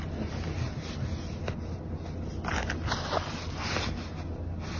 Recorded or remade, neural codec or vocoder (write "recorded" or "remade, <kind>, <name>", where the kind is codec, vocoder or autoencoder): recorded